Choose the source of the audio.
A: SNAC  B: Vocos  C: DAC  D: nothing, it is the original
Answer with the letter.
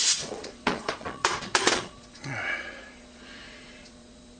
B